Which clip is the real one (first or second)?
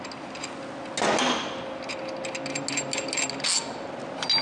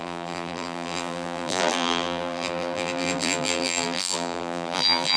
first